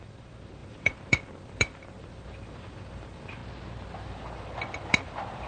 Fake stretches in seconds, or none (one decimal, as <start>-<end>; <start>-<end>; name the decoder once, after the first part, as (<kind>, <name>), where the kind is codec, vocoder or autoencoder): 0.0-3.4 (vocoder, BigVGAN v2); 4.0-5.5